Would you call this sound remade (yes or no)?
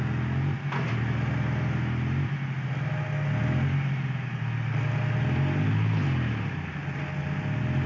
no